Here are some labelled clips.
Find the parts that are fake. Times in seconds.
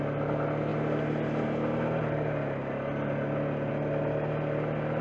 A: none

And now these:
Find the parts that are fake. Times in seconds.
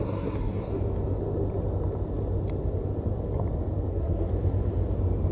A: 0.0-0.7 (codec, SNAC); 3.9-4.3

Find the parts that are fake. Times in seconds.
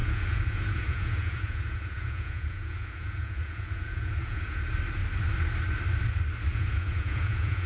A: 0.0-4.6 (vocoder, Vocos); 6.5-7.7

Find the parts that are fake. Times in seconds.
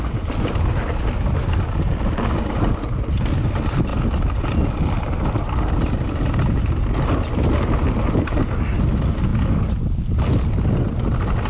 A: none